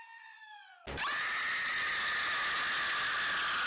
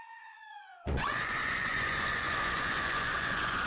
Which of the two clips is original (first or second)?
first